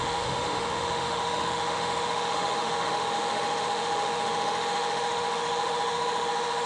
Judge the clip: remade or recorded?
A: remade